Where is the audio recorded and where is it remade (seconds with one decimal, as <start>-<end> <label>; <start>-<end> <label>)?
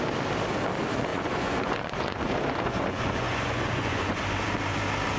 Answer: 0.0-1.1 recorded; 1.1-4.2 remade; 4.2-5.2 recorded